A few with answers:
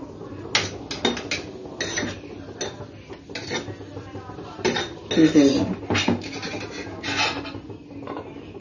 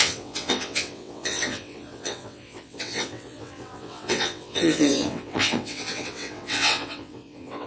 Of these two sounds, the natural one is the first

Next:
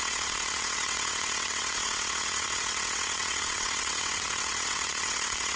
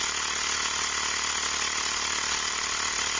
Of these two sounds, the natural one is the second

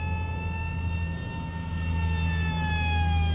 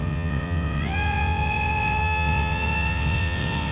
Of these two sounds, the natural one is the first